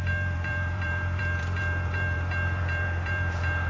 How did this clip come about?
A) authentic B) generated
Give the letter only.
B